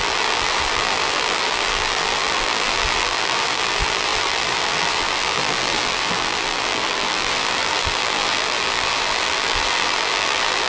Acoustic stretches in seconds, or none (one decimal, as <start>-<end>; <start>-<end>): none